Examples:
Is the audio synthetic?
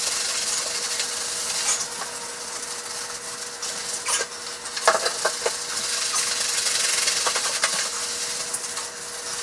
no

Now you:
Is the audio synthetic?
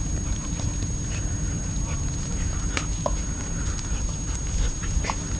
no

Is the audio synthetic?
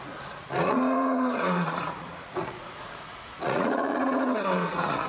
yes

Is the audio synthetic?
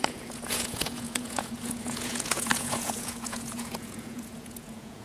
yes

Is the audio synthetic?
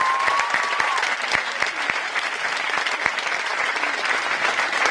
no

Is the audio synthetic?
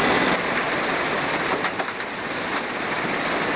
no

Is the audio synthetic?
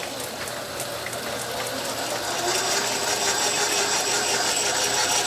no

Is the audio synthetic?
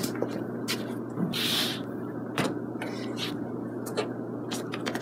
no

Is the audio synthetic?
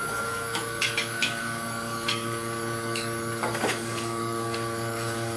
yes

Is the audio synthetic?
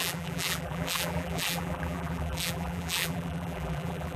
yes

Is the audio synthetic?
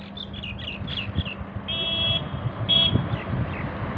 no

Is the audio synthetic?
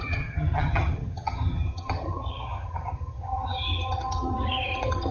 yes